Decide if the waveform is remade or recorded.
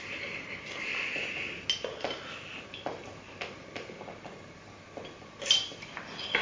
recorded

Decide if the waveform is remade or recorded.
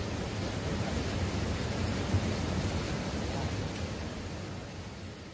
recorded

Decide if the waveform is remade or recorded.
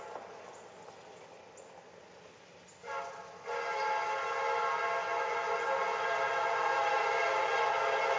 recorded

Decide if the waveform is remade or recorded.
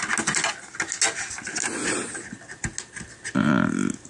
recorded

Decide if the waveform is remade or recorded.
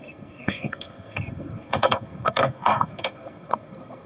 remade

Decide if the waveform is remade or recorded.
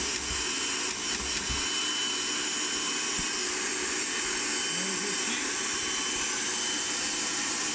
recorded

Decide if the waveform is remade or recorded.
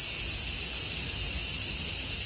recorded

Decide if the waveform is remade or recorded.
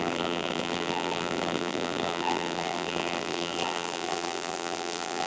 remade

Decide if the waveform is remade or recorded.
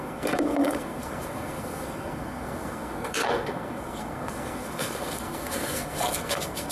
remade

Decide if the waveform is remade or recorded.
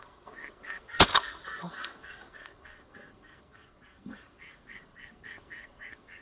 remade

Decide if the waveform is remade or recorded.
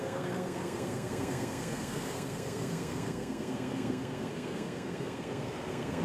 remade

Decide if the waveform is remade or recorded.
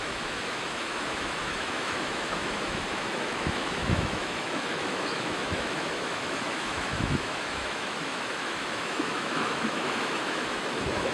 remade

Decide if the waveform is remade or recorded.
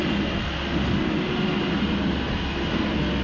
recorded